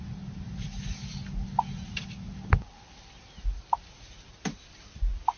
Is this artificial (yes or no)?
no